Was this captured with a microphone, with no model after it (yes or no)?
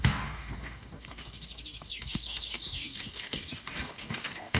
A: no